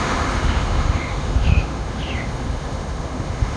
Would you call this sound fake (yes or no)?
yes